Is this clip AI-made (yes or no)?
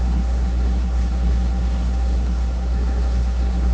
yes